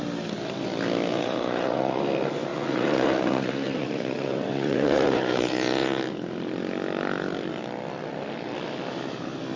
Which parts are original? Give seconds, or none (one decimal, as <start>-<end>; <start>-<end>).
0.0-1.1; 2.0-2.5; 6.0-9.6

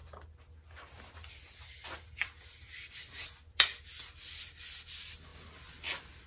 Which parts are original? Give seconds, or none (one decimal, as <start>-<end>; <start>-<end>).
0.0-6.3